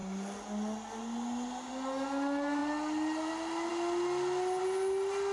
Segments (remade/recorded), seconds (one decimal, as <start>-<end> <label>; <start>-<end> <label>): 0.0-5.3 recorded